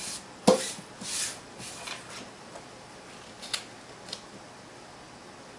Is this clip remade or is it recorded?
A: recorded